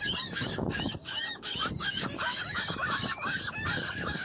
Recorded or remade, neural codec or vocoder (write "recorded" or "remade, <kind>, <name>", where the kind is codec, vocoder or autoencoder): remade, codec, DAC